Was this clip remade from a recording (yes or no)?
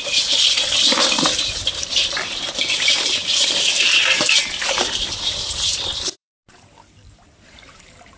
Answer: yes